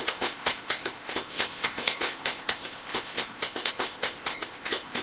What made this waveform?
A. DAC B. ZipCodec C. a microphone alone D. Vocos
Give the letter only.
B